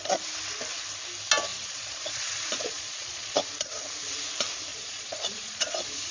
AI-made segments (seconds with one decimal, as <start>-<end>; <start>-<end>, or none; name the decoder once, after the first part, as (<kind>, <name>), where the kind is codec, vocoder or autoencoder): 1.5-3.4 (vocoder, Vocos); 4.7-6.1